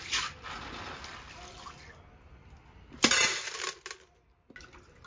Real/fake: real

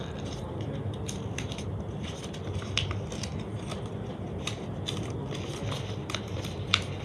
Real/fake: real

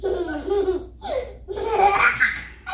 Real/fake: real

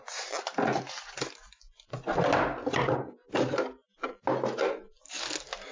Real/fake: real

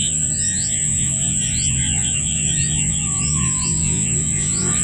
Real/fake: fake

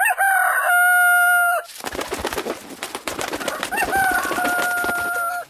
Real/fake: real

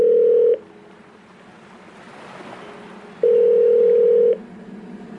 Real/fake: real